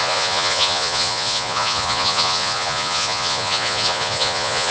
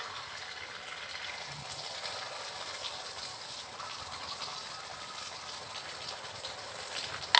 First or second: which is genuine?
second